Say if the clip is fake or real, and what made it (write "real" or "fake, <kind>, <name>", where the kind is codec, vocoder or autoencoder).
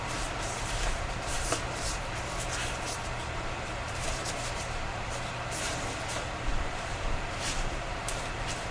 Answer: fake, vocoder, BigVGAN v2